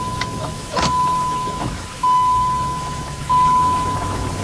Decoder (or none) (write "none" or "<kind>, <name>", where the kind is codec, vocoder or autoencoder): autoencoder, DAC-VAE